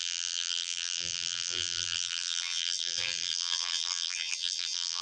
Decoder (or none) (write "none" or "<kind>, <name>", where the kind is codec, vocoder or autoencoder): vocoder, BigVGAN v2